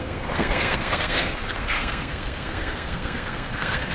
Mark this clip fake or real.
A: fake